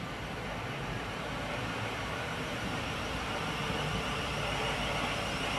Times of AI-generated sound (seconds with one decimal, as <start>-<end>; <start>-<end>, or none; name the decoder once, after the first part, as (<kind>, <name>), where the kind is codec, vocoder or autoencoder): 0.0-3.4 (vocoder, BigVGAN v2)